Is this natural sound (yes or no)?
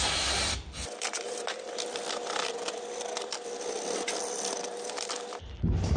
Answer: no